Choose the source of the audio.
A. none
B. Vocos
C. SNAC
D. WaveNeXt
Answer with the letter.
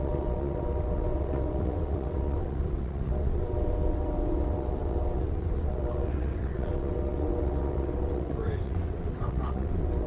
D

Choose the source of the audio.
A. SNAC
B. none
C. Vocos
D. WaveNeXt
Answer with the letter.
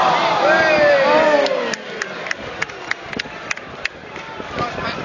B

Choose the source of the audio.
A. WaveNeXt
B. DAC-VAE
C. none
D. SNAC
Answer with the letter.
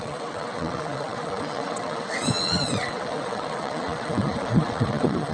A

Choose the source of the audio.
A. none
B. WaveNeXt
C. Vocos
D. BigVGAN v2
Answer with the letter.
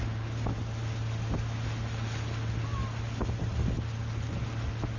A